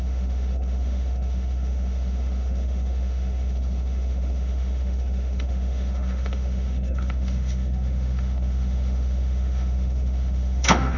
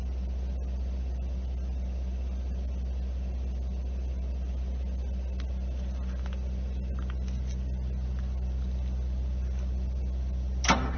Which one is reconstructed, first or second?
first